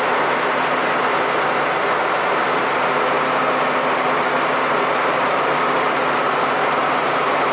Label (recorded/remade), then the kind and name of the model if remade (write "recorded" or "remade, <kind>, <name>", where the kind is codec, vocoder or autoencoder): recorded